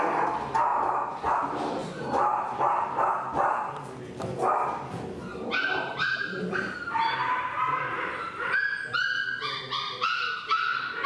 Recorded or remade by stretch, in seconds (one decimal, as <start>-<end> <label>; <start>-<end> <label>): 0.0-0.7 recorded; 0.7-1.4 remade; 1.4-1.8 recorded; 1.8-3.1 remade; 3.1-5.3 recorded; 5.3-8.6 remade; 8.6-11.1 recorded